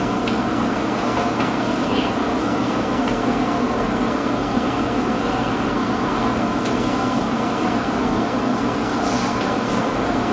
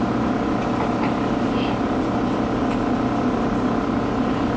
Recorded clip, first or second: second